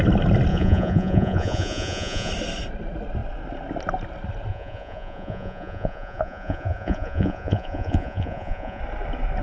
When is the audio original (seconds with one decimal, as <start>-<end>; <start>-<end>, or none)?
0.0-0.5; 2.3-4.5; 8.8-9.4